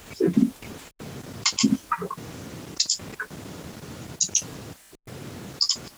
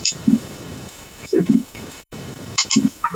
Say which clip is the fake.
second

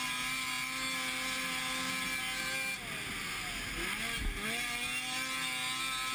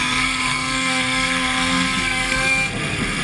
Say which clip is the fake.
second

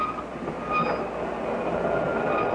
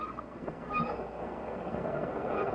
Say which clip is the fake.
second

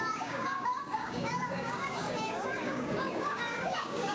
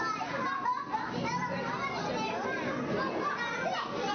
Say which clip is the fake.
first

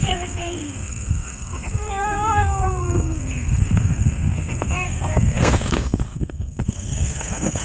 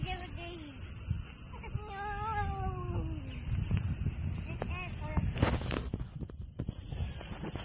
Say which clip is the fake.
first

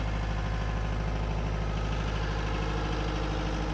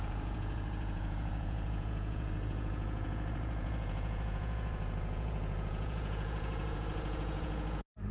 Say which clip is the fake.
second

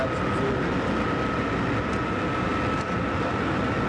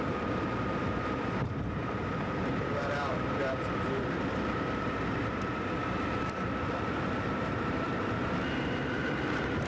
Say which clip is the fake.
second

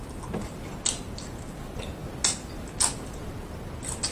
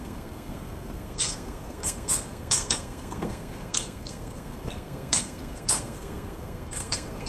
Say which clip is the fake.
second